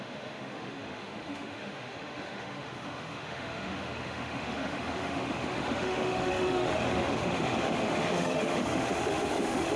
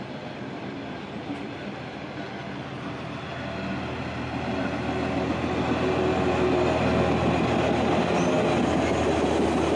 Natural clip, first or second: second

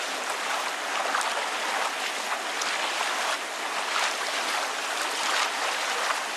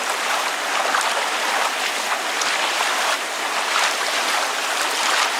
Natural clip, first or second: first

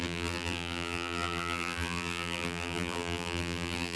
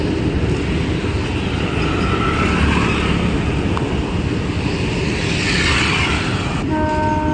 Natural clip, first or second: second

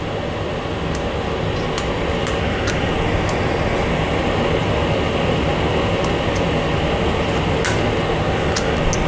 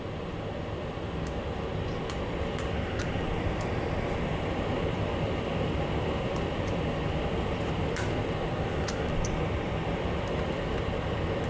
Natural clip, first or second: first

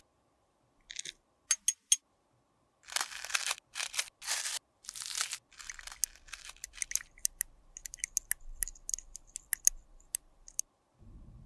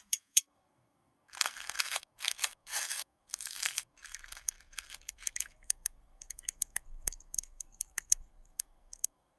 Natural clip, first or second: first